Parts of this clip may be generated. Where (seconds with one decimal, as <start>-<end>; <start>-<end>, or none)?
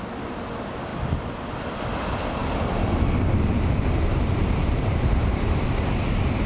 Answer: 2.4-5.6